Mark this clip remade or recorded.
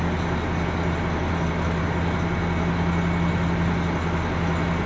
recorded